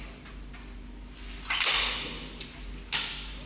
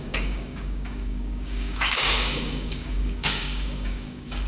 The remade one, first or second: second